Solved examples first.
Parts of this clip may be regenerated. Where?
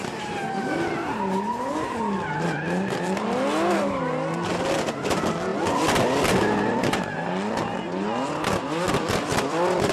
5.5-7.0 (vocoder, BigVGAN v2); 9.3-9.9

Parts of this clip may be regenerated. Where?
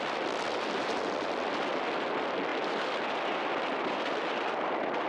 none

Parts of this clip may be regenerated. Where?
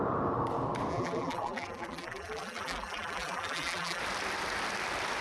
0.9-4.0 (vocoder, BigVGAN v2)